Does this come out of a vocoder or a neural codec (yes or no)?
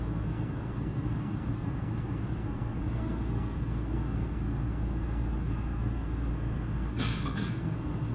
yes